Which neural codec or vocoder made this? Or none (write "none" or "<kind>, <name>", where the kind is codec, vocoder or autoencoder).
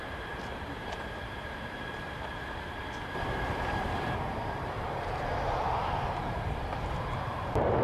vocoder, BigVGAN v2